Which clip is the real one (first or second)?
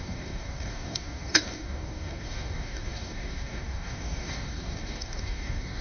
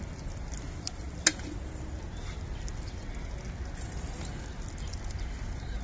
second